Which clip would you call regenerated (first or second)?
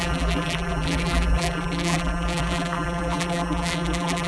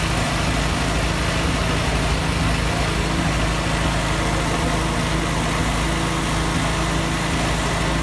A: first